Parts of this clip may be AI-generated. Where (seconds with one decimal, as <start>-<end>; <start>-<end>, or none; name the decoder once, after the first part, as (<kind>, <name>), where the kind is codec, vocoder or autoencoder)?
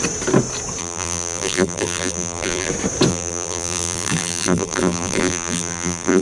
0.8-2.7 (vocoder, BigVGAN v2); 3.1-6.2